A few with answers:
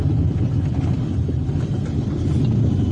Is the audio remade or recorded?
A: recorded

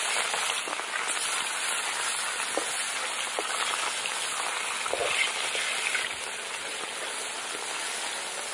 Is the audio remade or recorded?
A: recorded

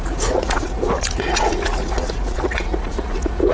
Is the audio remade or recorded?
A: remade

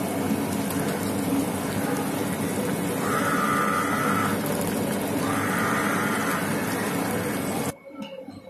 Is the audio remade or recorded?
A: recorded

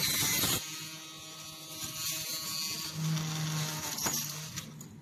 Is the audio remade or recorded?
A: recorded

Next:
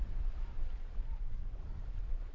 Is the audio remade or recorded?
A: recorded